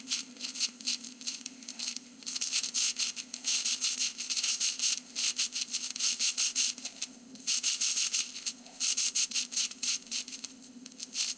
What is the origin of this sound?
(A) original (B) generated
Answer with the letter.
B